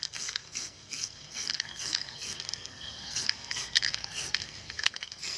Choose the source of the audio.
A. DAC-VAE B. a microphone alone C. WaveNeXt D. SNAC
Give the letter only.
D